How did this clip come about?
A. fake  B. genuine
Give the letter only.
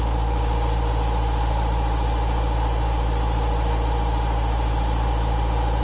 B